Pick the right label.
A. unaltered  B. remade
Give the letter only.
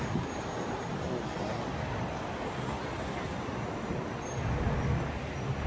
A